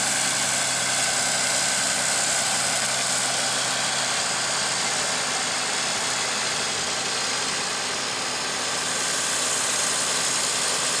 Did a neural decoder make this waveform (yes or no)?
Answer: no